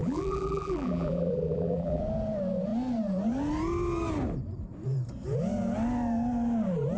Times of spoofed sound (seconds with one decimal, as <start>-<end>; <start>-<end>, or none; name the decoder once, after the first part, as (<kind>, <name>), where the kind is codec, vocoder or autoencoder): 0.0-2.0 (vocoder, BigVGAN v2)